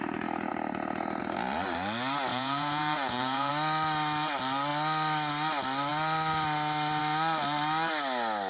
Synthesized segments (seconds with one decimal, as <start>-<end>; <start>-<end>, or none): 2.3-3.5